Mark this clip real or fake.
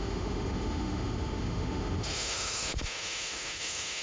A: fake